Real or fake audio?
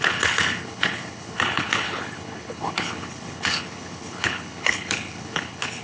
fake